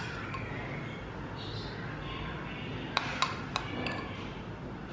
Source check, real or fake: real